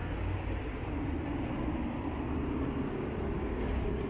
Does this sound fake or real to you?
real